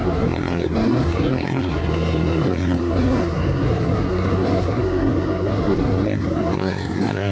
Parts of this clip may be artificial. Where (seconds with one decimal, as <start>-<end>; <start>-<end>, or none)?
0.0-7.3